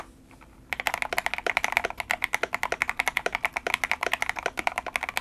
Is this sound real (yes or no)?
yes